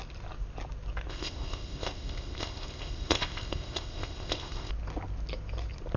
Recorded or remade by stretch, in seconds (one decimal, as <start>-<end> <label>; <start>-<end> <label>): 0.0-1.1 recorded; 1.1-4.7 remade; 4.7-6.0 recorded